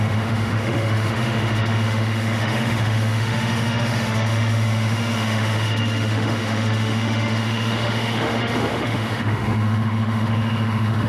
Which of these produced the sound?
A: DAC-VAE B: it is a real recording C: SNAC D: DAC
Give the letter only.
A